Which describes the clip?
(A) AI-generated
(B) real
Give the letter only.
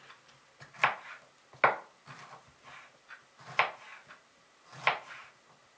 B